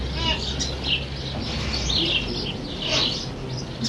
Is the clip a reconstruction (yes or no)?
no